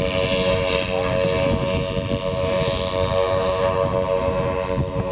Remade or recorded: recorded